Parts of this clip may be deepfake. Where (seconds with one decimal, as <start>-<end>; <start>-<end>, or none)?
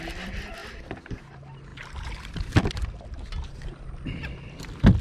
none